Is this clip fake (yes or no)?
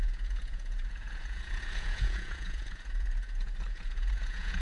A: yes